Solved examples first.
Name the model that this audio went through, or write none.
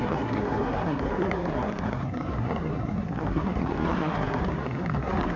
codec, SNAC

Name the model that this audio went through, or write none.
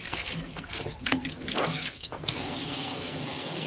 codec, SNAC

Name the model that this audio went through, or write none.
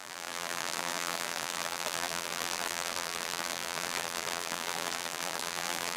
vocoder, BigVGAN v2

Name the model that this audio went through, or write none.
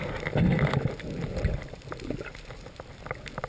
none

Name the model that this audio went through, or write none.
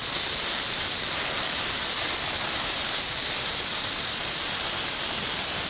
vocoder, BigVGAN v2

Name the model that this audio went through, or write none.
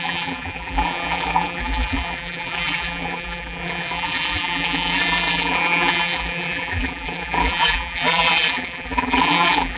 vocoder, BigVGAN v2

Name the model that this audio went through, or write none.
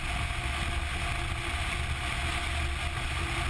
none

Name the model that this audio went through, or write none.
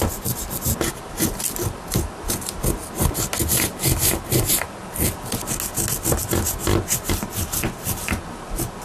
none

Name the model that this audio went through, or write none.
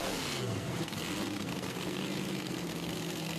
codec, SNAC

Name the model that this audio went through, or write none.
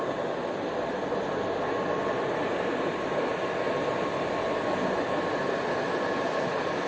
none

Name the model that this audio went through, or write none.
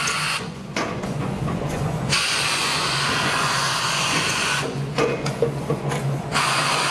vocoder, Vocos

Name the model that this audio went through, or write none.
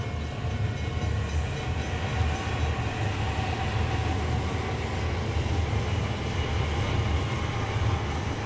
none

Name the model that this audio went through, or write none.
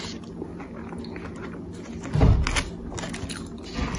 none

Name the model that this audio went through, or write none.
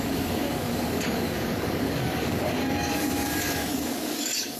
codec, DAC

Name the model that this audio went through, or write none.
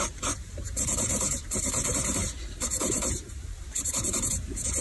vocoder, BigVGAN v2